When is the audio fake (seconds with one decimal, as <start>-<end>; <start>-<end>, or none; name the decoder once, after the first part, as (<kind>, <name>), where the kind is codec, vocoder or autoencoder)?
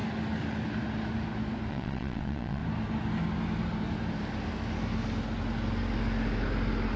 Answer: 1.7-2.6 (vocoder, WaveNeXt)